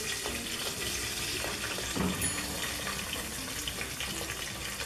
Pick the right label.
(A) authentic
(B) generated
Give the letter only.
A